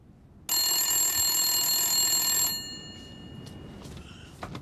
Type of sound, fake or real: real